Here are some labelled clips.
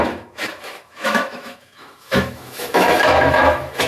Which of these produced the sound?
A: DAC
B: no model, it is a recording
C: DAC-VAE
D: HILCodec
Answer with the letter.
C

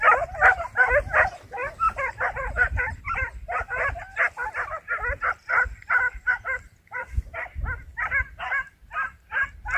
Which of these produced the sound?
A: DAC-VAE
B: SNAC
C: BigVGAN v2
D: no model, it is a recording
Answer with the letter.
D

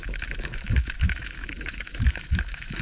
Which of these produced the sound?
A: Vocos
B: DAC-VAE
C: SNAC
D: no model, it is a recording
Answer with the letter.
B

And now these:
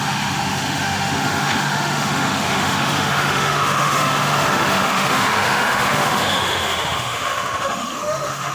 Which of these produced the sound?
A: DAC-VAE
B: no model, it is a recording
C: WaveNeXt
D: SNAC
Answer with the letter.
A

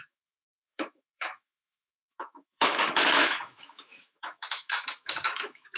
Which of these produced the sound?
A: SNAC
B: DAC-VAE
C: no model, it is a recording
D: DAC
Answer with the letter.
B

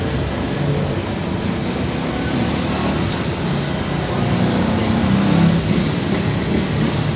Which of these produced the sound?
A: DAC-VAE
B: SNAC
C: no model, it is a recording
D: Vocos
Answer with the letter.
C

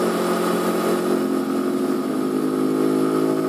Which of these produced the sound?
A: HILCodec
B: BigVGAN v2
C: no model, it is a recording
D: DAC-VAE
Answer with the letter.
C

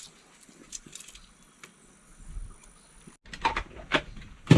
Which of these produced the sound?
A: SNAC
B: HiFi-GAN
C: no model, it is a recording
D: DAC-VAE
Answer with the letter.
C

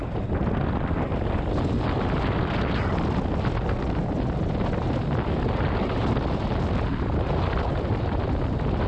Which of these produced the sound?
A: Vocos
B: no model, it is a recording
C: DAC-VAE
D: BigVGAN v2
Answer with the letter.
B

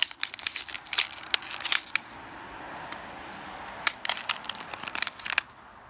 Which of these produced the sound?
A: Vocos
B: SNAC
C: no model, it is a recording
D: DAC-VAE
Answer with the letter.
C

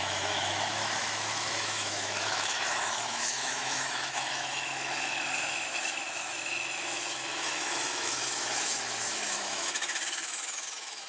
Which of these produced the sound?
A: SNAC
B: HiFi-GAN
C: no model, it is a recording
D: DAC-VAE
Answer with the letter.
D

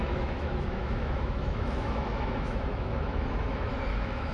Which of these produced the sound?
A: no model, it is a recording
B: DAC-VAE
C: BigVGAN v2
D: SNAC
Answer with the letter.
B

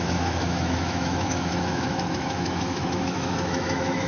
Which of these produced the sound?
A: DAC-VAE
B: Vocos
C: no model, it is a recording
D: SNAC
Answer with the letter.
A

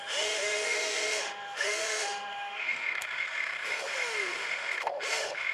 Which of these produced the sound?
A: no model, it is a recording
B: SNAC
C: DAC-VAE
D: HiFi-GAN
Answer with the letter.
C